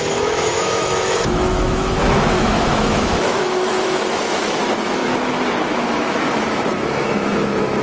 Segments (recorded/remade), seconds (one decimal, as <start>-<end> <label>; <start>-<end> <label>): 0.0-5.1 remade; 5.1-5.6 recorded; 5.6-7.8 remade